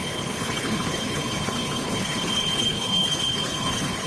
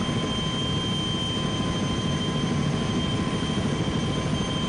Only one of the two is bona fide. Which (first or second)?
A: second